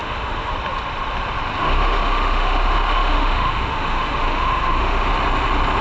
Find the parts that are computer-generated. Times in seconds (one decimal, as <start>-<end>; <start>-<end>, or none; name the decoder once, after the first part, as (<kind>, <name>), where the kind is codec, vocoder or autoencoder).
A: 0.0-0.5 (autoencoder, DAC-VAE); 1.6-5.1